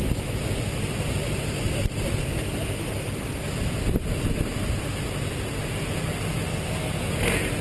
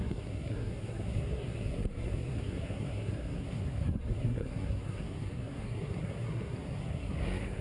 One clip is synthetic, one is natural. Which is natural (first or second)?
first